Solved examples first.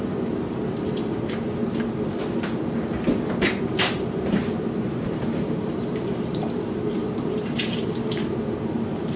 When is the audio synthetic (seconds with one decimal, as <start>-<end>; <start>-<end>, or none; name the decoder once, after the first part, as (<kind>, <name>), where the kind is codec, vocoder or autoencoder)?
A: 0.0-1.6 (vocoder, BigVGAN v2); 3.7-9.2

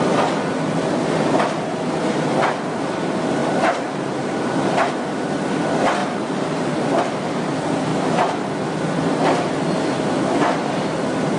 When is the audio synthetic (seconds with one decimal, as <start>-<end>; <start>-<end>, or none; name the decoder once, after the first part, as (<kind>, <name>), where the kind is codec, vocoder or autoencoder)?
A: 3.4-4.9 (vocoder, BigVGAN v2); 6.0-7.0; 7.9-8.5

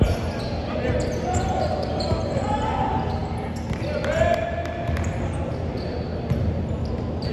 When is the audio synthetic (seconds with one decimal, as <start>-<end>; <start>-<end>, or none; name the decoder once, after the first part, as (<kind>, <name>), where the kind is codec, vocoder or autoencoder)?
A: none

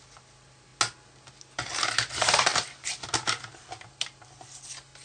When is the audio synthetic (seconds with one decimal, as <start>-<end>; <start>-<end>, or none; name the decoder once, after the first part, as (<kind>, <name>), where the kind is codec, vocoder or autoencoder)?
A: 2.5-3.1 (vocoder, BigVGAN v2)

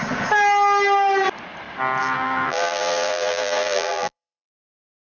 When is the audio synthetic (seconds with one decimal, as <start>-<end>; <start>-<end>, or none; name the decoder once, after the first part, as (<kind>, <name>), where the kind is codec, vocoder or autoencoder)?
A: 2.0-5.1 (vocoder, BigVGAN v2)